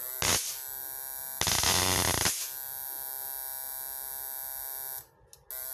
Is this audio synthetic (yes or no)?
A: no